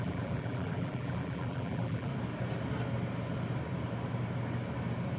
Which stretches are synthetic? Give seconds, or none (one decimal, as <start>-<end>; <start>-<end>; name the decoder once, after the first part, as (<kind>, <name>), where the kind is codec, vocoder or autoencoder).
0.0-2.1 (vocoder, BigVGAN v2)